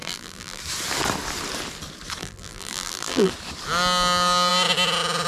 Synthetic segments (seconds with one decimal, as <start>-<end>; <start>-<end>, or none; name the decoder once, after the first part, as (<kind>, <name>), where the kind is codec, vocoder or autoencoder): 0.0-0.6 (vocoder, BigVGAN v2); 2.2-3.3